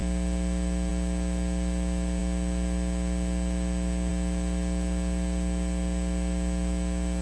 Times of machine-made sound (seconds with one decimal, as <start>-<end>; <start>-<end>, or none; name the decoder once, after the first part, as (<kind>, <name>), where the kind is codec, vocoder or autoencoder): none